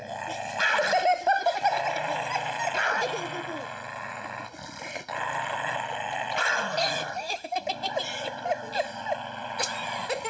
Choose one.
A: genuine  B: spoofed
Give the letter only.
A